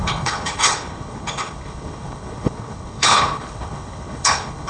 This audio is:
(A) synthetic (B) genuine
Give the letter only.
A